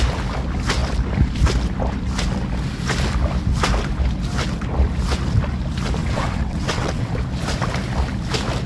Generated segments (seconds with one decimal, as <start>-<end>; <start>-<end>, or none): 6.0-7.1